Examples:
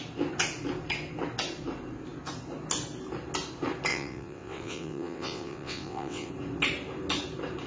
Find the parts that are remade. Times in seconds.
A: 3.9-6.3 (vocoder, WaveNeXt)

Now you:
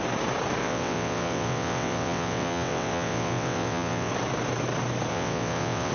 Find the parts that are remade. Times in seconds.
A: 0.6-4.1 (vocoder, WaveNeXt); 5.1-5.9

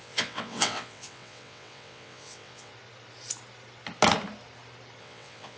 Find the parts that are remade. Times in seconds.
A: 0.0-2.7 (vocoder, WaveNeXt); 5.0-5.6